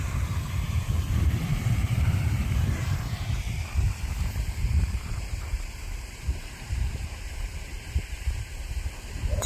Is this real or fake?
fake